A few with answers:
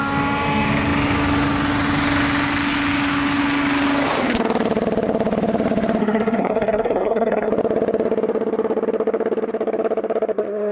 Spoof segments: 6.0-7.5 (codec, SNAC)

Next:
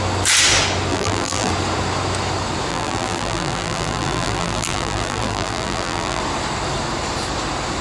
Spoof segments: 0.9-1.5 (vocoder, BigVGAN v2); 2.7-6.2